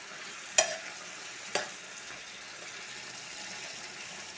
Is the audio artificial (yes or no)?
no